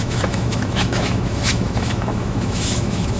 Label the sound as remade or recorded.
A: remade